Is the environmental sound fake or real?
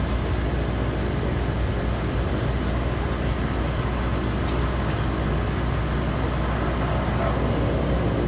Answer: real